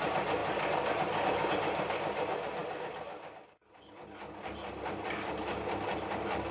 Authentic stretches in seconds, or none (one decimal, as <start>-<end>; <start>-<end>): 0.0-6.5